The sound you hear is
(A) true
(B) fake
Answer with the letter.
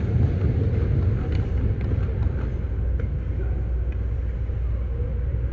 A